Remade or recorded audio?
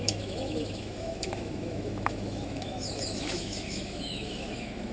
remade